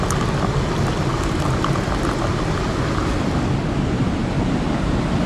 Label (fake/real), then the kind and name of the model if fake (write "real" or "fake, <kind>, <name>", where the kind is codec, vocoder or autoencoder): real